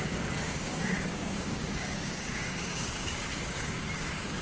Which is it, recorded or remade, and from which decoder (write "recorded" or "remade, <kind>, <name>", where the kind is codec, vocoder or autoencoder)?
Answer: remade, codec, DAC